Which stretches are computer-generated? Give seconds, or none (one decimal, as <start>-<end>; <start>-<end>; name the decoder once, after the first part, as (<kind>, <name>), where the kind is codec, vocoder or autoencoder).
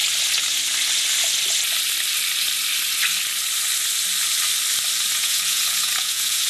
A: 5.2-6.5 (vocoder, Vocos)